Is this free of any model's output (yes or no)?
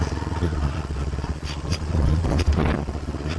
no